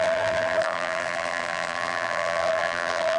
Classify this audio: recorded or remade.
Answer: remade